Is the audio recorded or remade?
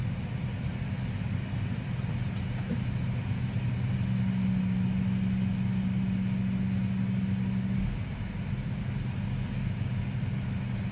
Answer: recorded